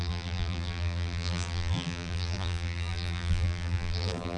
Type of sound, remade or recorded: remade